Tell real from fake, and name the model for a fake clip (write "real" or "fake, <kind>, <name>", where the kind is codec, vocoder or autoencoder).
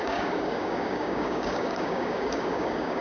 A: fake, codec, DAC